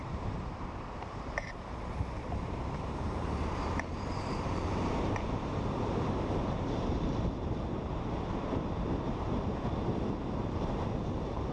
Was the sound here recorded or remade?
remade